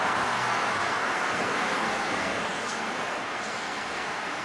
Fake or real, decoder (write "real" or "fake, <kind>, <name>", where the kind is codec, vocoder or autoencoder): fake, codec, SNAC